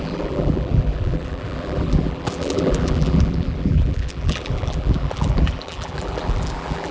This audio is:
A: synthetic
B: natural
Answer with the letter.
A